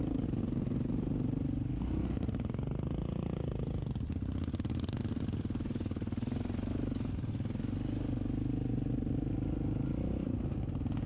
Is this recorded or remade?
recorded